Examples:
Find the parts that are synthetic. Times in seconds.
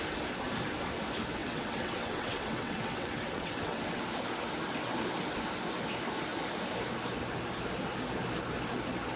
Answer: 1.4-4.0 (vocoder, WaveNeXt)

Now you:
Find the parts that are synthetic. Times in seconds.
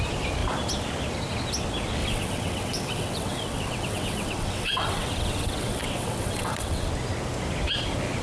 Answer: 2.0-6.9 (vocoder, WaveNeXt)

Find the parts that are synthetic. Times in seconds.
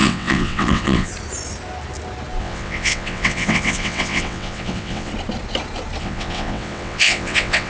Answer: 0.0-1.1 (vocoder, WaveNeXt); 2.4-5.1; 6.0-7.7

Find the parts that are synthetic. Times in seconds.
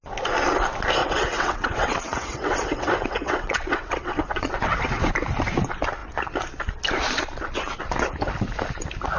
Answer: 1.0-5.1 (vocoder, WaveNeXt)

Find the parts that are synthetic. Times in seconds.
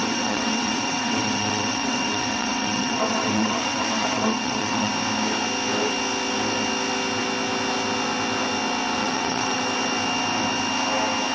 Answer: 0.0-4.9 (vocoder, WaveNeXt); 9.0-9.6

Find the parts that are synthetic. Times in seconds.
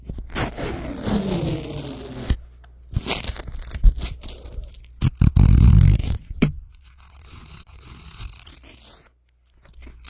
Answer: 6.0-8.2 (vocoder, WaveNeXt)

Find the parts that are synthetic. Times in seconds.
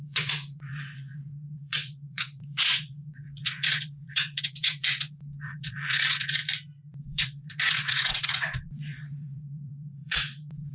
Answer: 0.0-6.4 (vocoder, WaveNeXt); 7.0-10.7